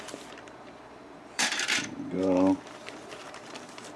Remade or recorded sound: remade